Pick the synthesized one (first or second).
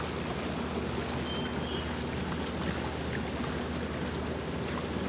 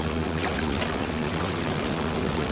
second